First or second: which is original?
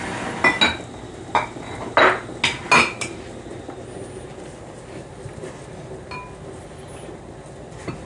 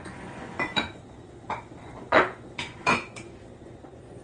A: first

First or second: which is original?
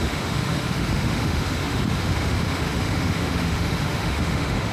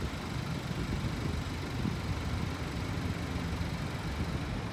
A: second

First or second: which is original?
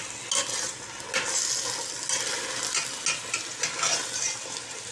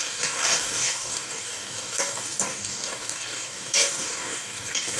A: first